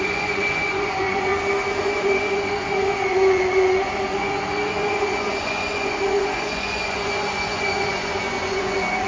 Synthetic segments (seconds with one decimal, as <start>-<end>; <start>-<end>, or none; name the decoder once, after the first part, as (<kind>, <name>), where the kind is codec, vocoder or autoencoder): 0.0-1.3 (vocoder, Vocos); 1.8-9.1